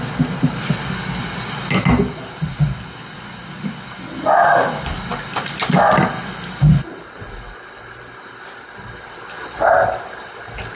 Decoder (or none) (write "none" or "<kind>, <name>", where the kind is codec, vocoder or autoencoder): none